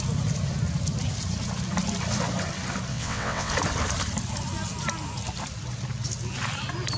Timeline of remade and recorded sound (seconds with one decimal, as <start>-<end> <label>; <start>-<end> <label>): 0.0-2.9 recorded; 2.9-3.5 remade; 3.5-7.0 recorded